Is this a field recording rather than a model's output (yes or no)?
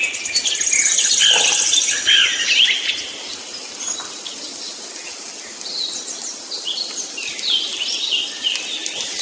yes